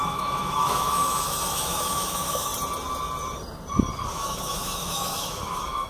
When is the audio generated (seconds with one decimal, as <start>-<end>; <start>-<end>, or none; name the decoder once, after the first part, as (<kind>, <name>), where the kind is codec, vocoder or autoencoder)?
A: 0.0-2.5 (autoencoder, DAC-VAE); 4.1-5.9